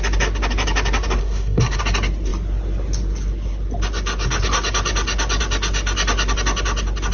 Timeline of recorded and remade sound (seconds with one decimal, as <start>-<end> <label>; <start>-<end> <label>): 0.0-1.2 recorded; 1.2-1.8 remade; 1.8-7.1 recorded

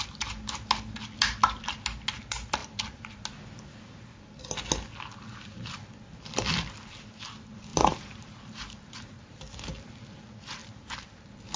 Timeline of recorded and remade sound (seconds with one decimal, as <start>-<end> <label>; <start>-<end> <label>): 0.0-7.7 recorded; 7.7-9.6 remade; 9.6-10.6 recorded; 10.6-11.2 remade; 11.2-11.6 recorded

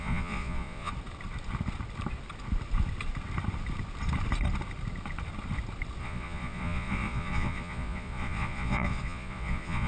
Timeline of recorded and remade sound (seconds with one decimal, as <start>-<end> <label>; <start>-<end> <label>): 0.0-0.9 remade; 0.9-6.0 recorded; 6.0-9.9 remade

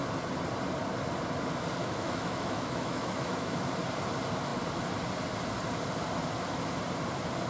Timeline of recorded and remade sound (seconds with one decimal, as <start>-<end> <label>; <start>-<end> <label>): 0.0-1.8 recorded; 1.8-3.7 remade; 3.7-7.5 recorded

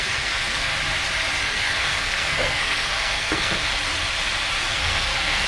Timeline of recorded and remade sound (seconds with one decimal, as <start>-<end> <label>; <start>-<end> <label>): 0.0-0.7 remade; 0.7-1.4 recorded; 1.4-3.7 remade; 3.7-4.7 recorded; 4.7-5.5 remade